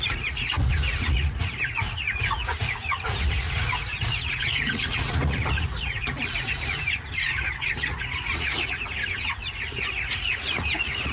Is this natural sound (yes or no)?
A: no